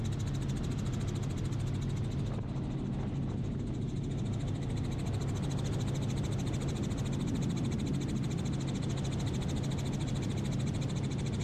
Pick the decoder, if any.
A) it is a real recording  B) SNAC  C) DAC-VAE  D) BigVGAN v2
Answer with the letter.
A